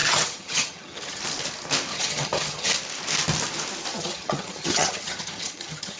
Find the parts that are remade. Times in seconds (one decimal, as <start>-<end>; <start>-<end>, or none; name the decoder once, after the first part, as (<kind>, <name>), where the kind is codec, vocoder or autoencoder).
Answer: 0.0-1.2 (vocoder, HiFi-GAN); 1.9-2.7; 3.9-6.0